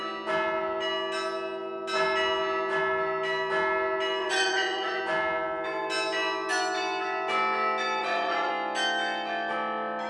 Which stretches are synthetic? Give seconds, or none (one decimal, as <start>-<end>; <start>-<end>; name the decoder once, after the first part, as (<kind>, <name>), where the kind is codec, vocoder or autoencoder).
4.2-5.0 (vocoder, Vocos); 8.0-8.5